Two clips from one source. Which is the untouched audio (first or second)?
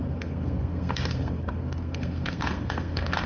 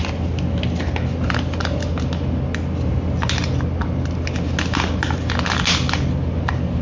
second